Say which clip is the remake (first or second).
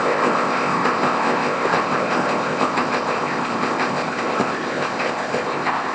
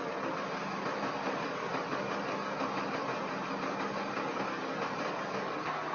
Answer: first